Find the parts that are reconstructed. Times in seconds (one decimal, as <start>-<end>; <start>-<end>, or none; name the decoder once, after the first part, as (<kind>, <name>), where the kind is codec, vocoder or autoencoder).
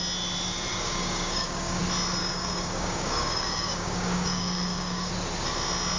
0.7-1.8 (codec, DAC); 2.2-5.1